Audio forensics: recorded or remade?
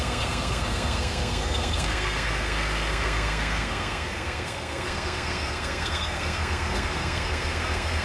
remade